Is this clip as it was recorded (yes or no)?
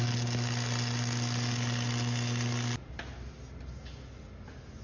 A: yes